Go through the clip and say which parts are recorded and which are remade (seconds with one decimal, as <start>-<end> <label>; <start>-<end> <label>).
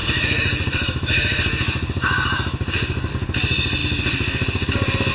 0.0-3.1 remade; 3.1-5.1 recorded